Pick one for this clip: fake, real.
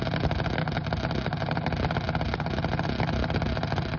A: real